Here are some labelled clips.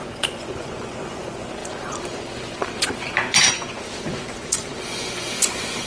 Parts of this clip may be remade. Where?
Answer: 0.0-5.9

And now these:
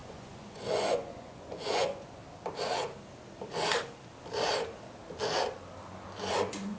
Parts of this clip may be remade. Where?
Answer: 0.0-2.2; 6.3-6.8

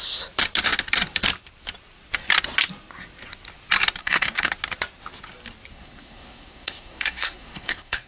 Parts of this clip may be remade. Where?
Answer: 4.0-4.5; 5.7-8.1

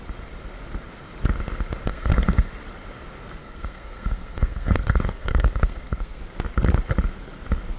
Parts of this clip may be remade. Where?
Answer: 1.9-2.5; 3.4-6.2

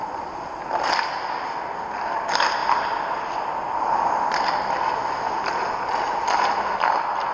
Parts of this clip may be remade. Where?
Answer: 2.6-5.4

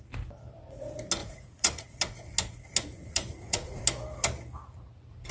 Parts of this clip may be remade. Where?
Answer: 1.2-2.0; 2.9-3.8

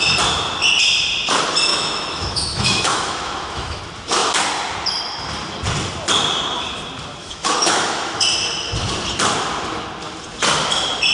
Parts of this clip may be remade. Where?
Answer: 1.7-3.8; 7.2-8.2